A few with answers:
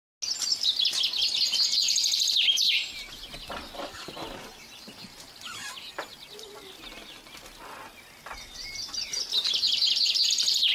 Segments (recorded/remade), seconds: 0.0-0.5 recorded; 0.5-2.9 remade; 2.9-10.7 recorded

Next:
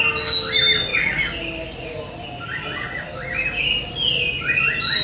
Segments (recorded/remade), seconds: 0.0-5.0 recorded

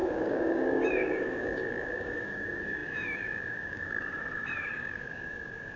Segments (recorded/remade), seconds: 0.0-5.8 remade

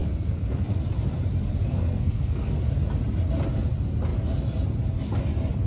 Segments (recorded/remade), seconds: 0.0-0.8 remade; 0.8-1.7 recorded; 1.7-2.7 remade; 2.7-5.7 recorded

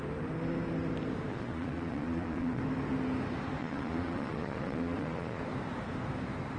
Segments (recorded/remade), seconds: 0.0-1.3 recorded; 1.3-2.6 remade; 2.6-3.6 recorded; 3.6-5.4 remade; 5.4-6.6 recorded

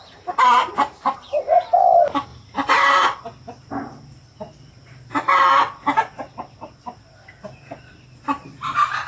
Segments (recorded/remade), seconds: 0.0-2.3 remade; 2.3-4.4 recorded; 4.4-5.3 remade; 5.3-8.2 recorded; 8.2-9.1 remade

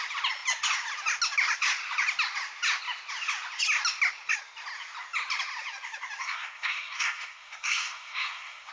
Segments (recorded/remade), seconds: 0.0-6.2 recorded; 6.2-8.7 remade

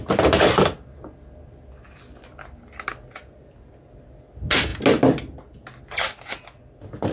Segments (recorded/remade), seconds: 0.0-7.1 recorded